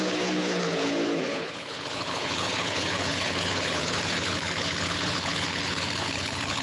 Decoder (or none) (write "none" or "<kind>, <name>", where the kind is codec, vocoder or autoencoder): codec, HILCodec